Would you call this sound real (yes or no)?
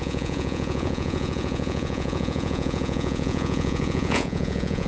no